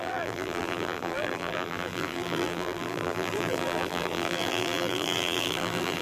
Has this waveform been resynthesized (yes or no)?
yes